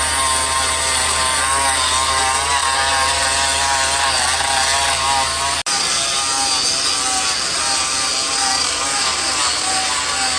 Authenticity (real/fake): real